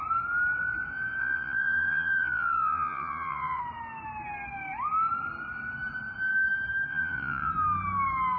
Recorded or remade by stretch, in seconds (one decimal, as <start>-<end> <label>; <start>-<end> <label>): 0.0-1.2 recorded; 1.2-3.6 remade; 3.6-6.9 recorded; 6.9-7.5 remade; 7.5-8.4 recorded